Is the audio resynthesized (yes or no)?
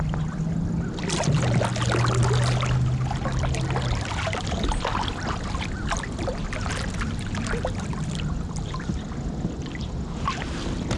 no